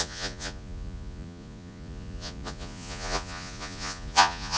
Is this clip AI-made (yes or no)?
yes